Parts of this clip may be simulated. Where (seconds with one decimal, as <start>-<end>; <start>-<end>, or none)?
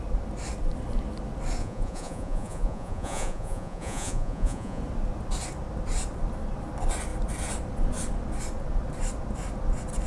1.6-4.8